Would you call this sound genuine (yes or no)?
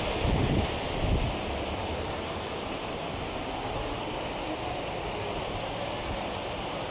yes